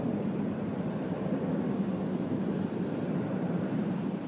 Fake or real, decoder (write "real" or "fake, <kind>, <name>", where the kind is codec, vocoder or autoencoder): fake, vocoder, BigVGAN v2